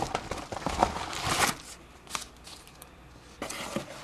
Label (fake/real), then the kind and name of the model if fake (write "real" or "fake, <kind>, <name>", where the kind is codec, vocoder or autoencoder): real